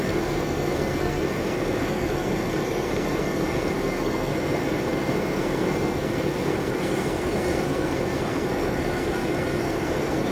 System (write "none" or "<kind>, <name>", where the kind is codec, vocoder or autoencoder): codec, SNAC